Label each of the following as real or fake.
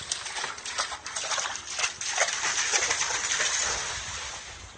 real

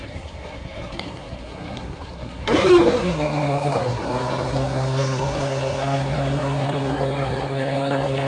fake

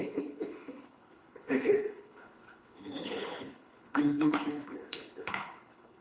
fake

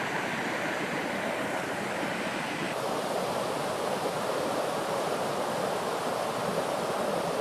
real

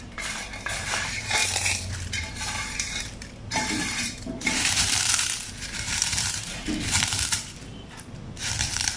fake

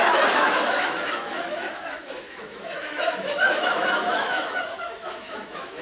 fake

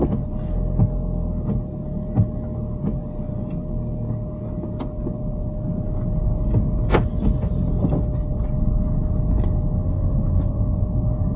real